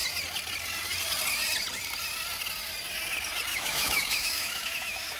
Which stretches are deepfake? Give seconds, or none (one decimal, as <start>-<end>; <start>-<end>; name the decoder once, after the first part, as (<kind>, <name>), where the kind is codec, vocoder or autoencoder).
3.5-5.2 (autoencoder, DAC-VAE)